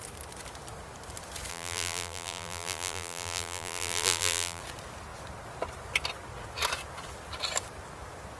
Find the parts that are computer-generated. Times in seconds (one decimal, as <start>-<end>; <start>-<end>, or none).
1.5-4.6

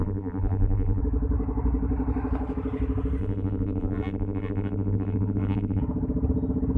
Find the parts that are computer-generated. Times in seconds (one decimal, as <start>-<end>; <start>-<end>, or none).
0.0-1.0; 3.2-5.8

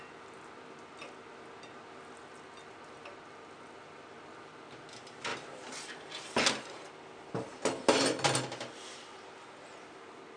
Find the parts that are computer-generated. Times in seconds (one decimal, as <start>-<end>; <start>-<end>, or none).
none